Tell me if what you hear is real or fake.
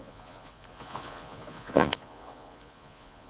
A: fake